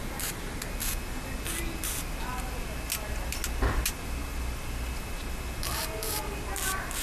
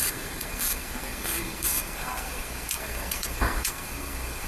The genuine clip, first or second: first